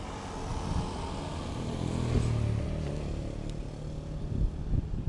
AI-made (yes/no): no